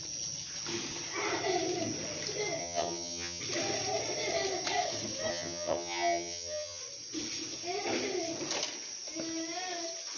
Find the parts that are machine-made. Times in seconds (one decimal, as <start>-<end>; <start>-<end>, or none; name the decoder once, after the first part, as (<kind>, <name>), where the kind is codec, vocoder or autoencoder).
2.6-3.4 (vocoder, HiFi-GAN); 5.3-6.8